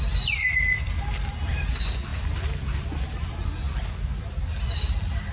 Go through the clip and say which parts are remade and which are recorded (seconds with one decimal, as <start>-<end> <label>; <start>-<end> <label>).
0.0-5.3 recorded